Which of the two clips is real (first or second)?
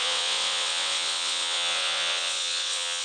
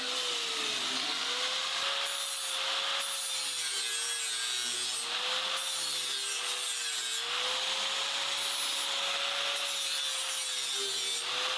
second